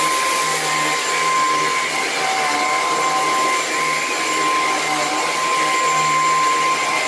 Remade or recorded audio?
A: recorded